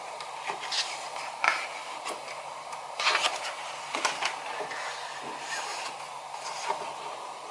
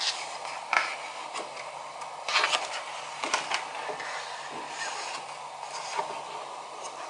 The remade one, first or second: first